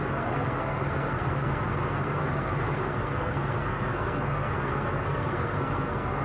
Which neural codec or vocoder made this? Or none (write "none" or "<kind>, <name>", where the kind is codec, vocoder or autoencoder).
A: codec, SNAC